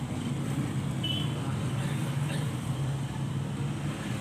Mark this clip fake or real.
real